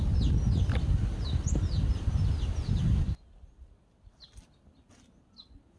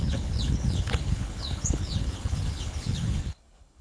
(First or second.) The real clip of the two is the first